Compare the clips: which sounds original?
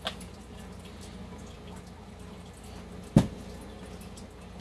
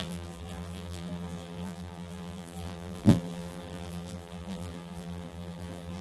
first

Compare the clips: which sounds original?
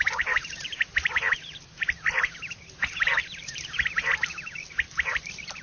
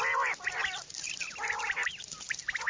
second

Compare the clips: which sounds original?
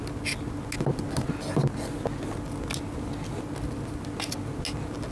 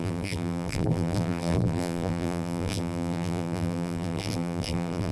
first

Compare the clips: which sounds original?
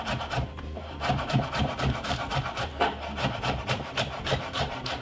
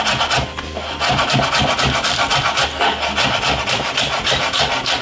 second